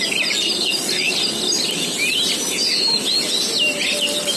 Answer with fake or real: real